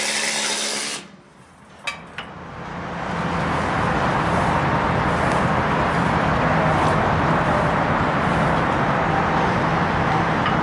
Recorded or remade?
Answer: recorded